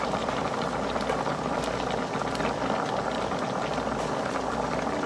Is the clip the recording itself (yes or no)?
no